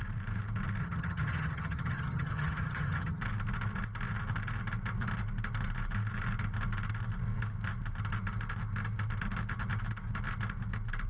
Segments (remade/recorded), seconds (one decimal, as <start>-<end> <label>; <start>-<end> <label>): 0.0-0.8 recorded; 0.8-3.2 remade; 3.2-11.1 recorded